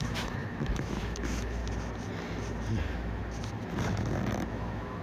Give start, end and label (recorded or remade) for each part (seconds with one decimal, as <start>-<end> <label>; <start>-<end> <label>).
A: 0.0-1.6 remade; 1.6-2.8 recorded; 2.8-3.2 remade; 3.2-4.5 recorded; 4.5-5.0 remade